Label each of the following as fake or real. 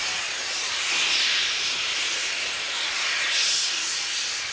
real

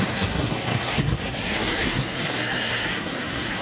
fake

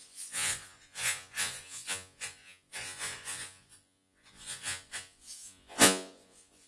fake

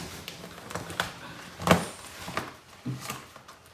real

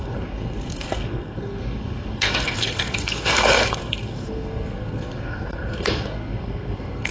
fake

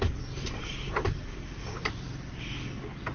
real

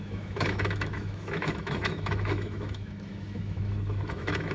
fake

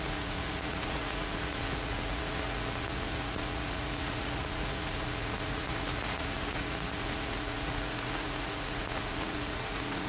fake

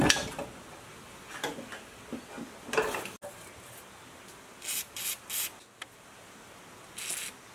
real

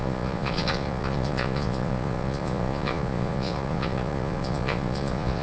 fake